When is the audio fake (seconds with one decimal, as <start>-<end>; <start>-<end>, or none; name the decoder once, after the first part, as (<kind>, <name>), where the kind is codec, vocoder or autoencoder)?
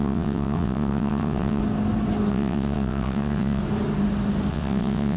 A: 0.0-1.6 (vocoder, WaveNeXt); 2.3-3.6; 4.5-5.2